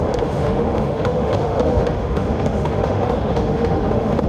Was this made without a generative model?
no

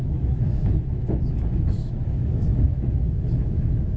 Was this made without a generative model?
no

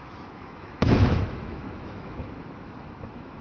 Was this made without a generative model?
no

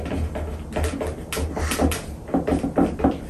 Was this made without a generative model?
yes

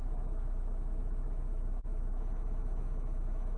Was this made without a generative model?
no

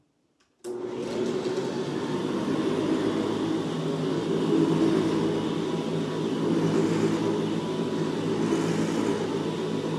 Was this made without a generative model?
yes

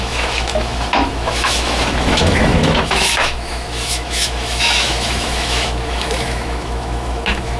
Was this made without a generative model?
no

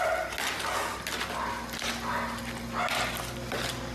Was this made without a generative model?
yes